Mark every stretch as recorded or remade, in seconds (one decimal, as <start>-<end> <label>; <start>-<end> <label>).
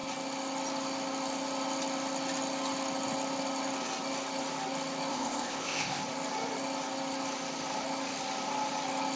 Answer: 0.0-5.1 recorded; 5.1-6.0 remade; 6.0-9.2 recorded